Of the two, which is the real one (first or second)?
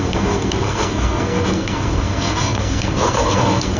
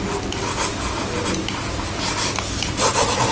second